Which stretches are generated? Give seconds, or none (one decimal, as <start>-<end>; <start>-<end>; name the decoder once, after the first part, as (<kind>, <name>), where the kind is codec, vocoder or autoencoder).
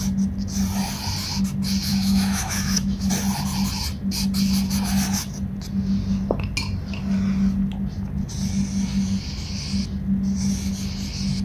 1.9-3.1 (autoencoder, DAC-VAE)